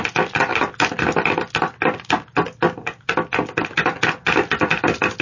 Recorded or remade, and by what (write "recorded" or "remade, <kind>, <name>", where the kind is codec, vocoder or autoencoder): recorded